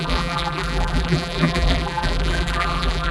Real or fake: fake